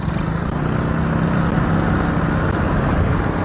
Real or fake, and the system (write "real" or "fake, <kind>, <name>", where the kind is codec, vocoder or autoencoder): real